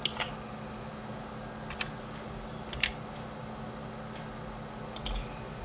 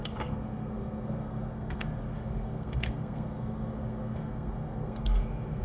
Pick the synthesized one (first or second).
second